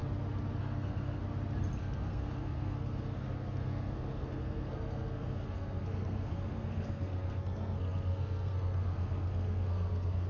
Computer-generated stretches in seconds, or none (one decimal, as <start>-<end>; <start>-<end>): 0.6-1.2; 1.8-10.3